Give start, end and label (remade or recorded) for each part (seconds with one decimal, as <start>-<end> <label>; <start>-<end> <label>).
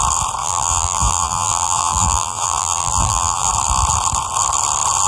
0.0-0.4 recorded; 0.4-3.5 remade; 3.5-5.1 recorded